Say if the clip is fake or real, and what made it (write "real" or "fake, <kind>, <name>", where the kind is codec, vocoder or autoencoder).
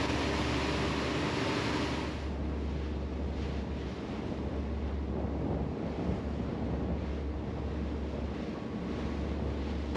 real